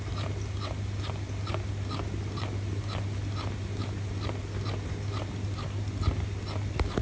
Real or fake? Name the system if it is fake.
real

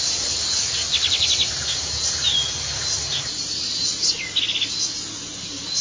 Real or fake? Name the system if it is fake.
real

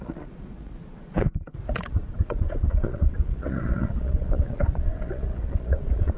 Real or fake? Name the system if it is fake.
fake, vocoder, Vocos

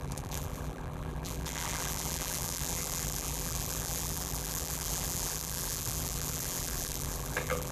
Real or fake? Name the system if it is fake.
fake, vocoder, BigVGAN v2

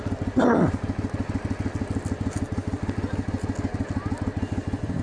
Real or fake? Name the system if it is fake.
real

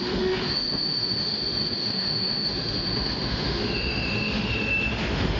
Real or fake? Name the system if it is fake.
fake, autoencoder, DAC-VAE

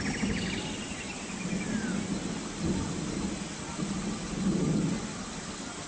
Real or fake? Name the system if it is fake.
real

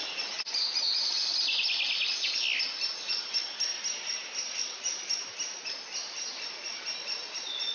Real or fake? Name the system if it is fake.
real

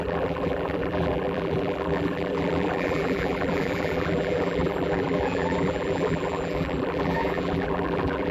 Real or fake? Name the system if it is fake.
fake, vocoder, BigVGAN v2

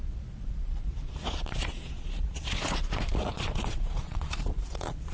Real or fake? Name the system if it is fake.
fake, vocoder, Vocos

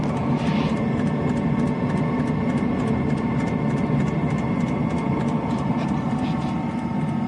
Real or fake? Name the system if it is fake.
real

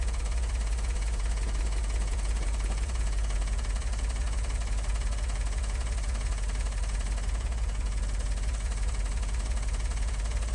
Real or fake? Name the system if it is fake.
fake, vocoder, Vocos